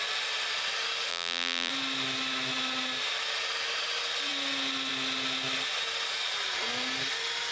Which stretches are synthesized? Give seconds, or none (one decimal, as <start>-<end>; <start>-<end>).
1.1-1.7